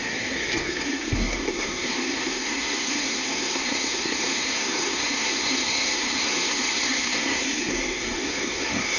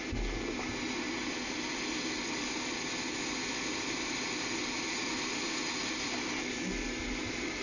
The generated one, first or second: first